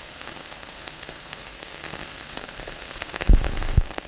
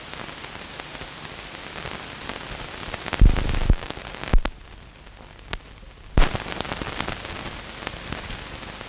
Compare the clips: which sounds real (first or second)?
second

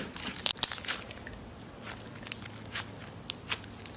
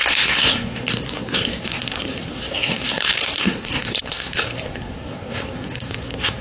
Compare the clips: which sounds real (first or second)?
first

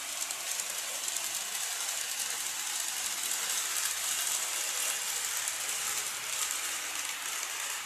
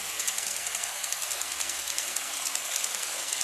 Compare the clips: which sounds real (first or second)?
first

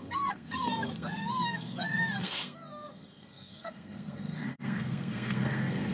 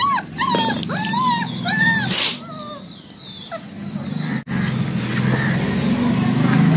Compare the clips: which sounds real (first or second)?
second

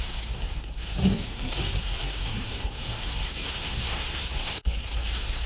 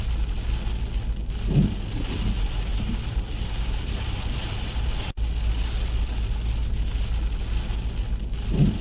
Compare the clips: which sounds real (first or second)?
second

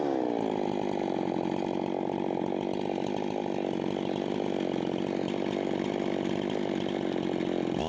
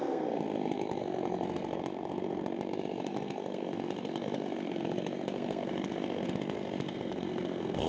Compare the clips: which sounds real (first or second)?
first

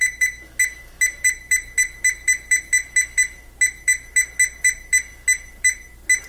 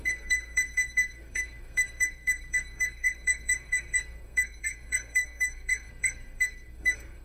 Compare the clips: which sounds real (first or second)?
first